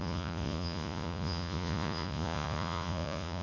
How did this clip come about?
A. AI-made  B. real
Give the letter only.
A